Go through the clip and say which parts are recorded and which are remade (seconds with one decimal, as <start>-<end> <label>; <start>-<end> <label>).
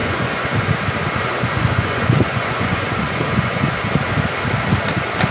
0.0-0.7 remade; 0.7-1.2 recorded; 1.2-3.7 remade; 3.7-5.3 recorded